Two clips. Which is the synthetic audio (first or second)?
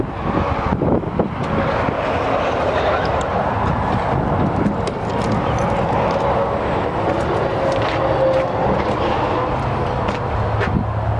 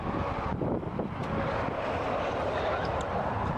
second